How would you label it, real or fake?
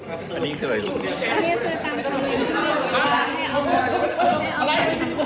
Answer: real